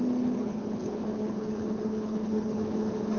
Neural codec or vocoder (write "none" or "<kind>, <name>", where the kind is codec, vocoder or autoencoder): codec, HILCodec